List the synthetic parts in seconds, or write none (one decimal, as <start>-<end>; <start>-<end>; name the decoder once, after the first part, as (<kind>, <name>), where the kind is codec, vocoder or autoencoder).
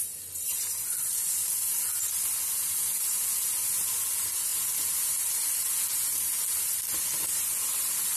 none